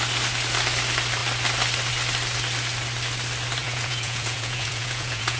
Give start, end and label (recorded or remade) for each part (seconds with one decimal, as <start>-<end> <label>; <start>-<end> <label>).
0.0-3.6 recorded; 3.6-5.4 remade